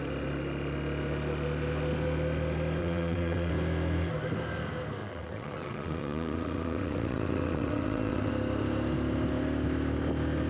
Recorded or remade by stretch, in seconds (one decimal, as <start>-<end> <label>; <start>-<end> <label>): 0.0-2.8 recorded; 2.8-3.5 remade; 3.5-5.0 recorded; 5.0-8.3 remade; 8.3-10.5 recorded